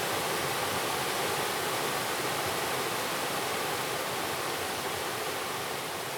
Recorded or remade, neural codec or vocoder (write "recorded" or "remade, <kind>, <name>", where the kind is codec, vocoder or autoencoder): recorded